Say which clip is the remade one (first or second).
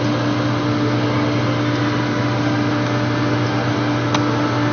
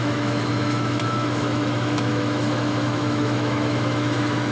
second